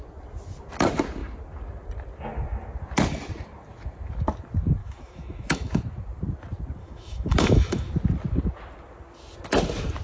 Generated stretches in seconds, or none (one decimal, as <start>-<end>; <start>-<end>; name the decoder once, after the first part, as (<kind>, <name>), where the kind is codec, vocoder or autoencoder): 4.8-5.8 (autoencoder, DAC-VAE); 6.8-7.9